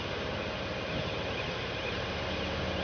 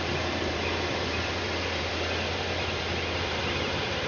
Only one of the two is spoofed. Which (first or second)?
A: second